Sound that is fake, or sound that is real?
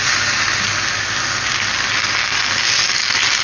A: real